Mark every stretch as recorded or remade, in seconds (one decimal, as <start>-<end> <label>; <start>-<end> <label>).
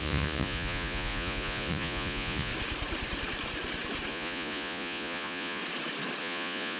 0.0-2.5 remade; 2.5-4.1 recorded; 4.1-5.6 remade; 5.6-6.2 recorded; 6.2-6.8 remade